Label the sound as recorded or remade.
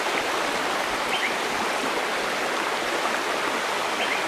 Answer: recorded